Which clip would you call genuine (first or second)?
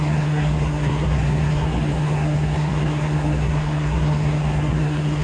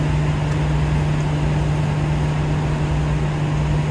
second